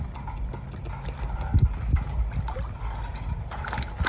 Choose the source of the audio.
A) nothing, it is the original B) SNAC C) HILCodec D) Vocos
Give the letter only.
A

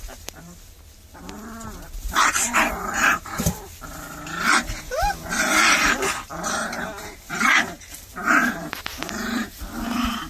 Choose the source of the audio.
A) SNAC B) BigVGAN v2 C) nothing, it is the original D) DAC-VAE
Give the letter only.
B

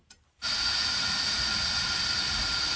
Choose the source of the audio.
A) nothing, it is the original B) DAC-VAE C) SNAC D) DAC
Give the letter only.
A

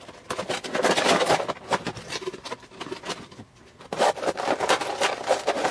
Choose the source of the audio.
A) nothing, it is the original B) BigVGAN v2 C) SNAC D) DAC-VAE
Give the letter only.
A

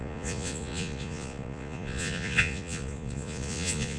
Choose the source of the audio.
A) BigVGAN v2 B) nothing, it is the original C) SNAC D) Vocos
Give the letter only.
D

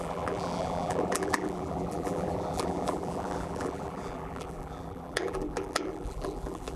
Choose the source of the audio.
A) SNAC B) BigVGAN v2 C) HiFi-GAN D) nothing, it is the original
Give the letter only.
B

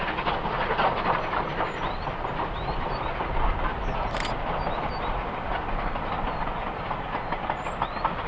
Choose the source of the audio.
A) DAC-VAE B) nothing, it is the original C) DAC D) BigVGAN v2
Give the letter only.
B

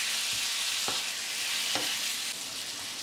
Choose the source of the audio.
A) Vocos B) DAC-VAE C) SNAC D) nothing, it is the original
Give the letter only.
D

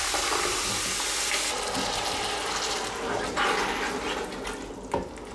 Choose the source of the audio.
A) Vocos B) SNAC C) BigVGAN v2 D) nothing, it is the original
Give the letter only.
D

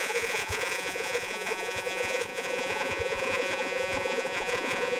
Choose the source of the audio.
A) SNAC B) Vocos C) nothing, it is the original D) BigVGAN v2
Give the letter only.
B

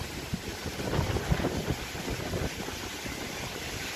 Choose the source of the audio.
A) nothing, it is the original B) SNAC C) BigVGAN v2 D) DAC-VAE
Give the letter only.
A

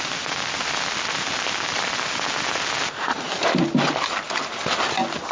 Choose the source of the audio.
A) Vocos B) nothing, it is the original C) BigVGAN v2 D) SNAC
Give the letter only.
B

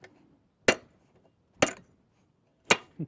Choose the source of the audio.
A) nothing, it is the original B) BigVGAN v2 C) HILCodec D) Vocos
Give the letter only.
A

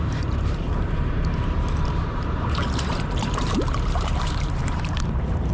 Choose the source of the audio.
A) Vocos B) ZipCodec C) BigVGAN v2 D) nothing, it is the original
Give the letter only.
C